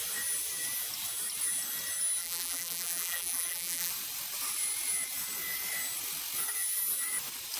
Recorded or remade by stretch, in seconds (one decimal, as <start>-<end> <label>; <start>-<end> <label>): 0.0-2.2 recorded; 2.2-3.9 remade; 3.9-7.6 recorded